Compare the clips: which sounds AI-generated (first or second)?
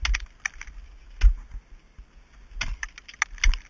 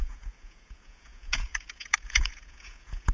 second